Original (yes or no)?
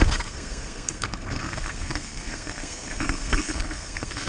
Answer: no